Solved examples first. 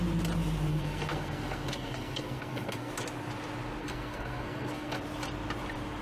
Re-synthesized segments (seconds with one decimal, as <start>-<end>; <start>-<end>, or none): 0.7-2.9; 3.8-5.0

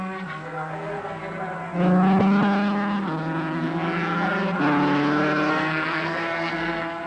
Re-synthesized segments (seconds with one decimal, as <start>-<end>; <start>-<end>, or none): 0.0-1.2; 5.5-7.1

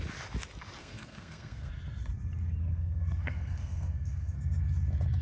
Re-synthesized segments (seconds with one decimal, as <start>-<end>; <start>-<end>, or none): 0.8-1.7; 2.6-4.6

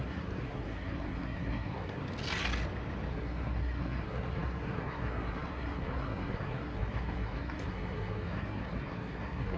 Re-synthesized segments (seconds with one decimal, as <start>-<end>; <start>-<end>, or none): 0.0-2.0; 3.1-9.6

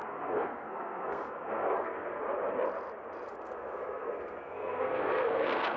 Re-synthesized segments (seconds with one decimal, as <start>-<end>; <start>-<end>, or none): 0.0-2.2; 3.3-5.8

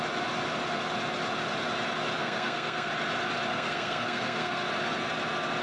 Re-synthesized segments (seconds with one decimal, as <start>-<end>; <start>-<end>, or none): 2.2-2.9; 3.5-4.7

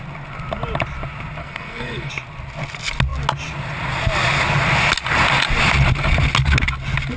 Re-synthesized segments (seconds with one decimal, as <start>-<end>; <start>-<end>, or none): 1.4-2.1

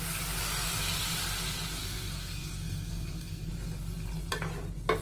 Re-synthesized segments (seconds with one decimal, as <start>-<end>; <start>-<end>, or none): 1.8-3.5